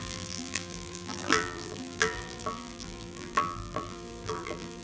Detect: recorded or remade remade